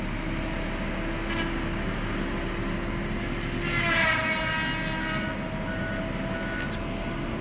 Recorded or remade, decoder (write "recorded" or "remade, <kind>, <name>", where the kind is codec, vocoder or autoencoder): recorded